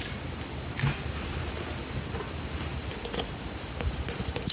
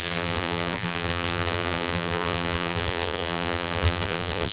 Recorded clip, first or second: first